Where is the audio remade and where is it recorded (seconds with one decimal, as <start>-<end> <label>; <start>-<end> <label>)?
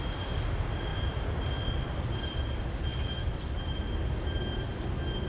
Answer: 0.0-5.3 recorded